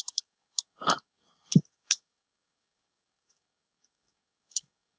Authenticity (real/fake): fake